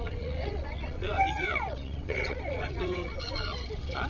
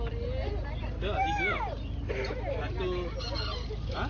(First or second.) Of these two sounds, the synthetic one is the first